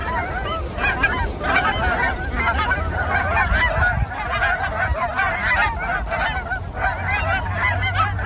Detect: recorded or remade recorded